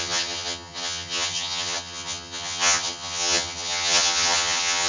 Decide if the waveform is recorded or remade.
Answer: remade